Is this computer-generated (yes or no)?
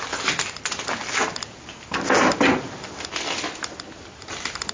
no